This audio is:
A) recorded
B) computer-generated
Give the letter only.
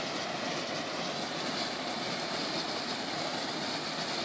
A